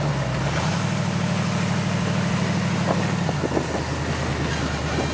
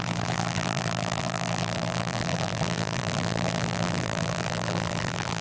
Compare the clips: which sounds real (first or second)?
first